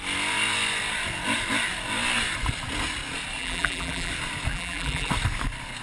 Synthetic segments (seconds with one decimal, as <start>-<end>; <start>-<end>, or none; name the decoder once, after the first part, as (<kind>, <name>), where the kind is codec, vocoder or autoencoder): 3.4-4.1 (vocoder, BigVGAN v2); 4.5-5.1